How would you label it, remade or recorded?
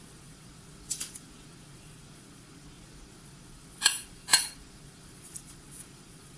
remade